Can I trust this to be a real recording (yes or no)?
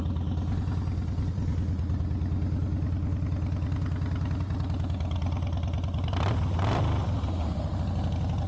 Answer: yes